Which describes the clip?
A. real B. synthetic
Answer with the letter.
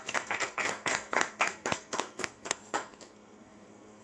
B